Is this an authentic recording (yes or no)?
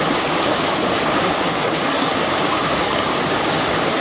no